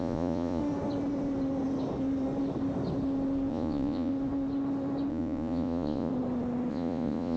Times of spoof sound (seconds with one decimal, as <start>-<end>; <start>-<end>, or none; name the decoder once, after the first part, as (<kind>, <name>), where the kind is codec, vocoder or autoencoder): 0.0-0.6 (vocoder, Vocos); 3.5-4.1; 5.1-6.1; 6.7-7.4